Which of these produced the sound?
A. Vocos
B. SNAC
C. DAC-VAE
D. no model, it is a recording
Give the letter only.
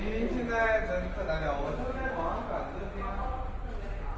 D